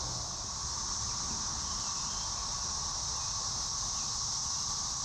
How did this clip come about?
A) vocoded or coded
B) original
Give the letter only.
B